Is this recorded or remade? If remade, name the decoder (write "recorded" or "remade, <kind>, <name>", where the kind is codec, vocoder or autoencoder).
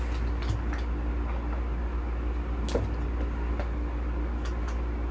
recorded